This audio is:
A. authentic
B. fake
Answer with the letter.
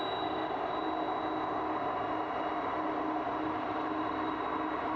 A